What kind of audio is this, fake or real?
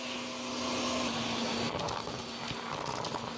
real